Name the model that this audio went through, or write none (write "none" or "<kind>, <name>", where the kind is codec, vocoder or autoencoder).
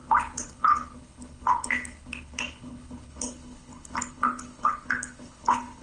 codec, HILCodec